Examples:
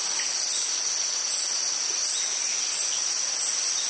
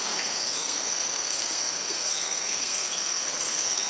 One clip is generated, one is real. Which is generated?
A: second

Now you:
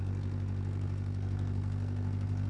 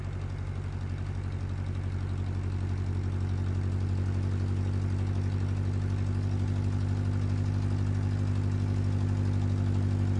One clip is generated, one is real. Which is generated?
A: first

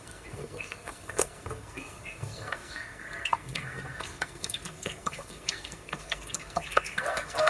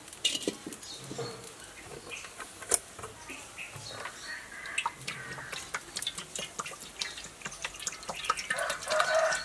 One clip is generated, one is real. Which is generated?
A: first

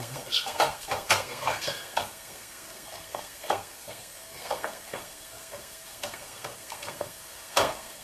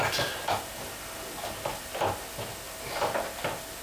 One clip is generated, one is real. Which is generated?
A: first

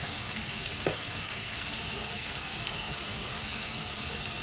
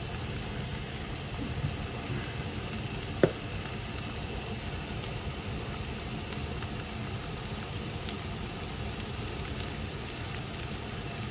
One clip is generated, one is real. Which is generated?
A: first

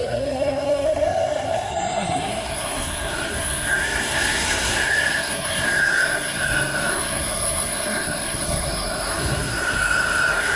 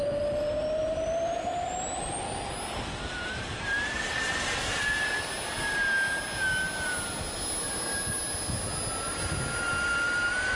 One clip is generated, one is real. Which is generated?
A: first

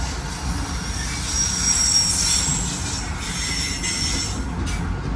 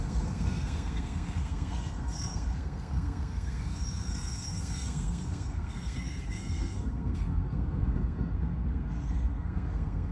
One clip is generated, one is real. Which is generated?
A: second